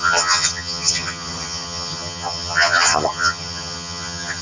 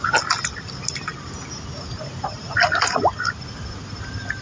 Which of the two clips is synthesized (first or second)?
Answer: first